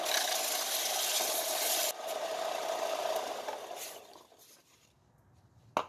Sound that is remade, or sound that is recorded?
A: recorded